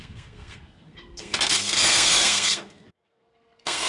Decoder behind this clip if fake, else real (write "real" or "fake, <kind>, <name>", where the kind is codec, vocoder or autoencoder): fake, codec, SNAC